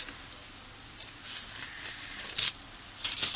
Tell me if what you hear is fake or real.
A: real